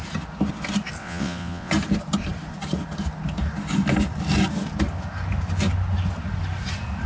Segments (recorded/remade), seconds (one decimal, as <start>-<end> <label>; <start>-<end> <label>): 0.0-1.0 recorded; 1.0-1.7 remade; 1.7-7.1 recorded